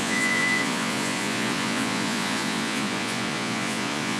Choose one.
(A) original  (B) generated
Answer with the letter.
B